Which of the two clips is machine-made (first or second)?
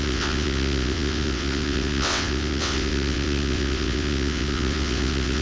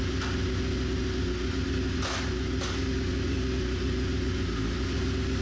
first